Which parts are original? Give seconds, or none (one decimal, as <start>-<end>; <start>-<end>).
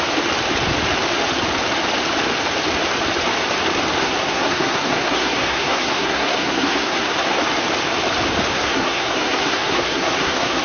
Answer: 0.0-4.0; 7.4-8.5